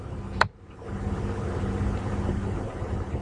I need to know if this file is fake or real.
fake